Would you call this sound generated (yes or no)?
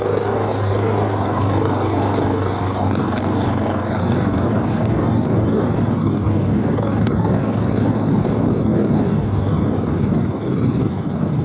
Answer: yes